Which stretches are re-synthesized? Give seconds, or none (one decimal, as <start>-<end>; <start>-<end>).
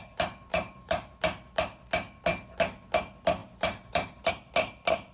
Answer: 0.5-1.1; 3.4-4.3